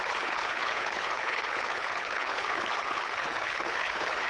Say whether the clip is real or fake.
fake